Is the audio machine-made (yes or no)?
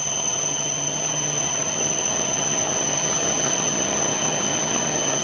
yes